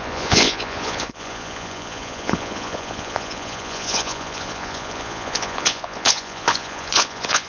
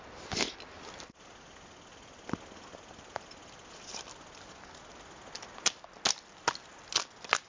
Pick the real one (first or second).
second